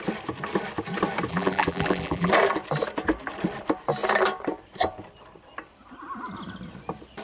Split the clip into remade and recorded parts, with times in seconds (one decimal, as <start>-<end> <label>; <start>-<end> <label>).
0.0-1.3 recorded; 1.3-2.3 remade; 2.3-7.2 recorded